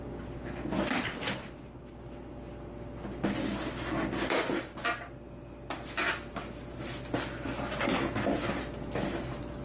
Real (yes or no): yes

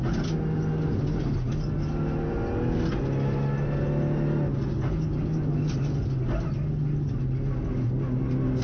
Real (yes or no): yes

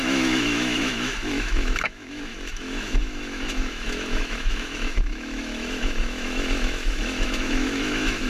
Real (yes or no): no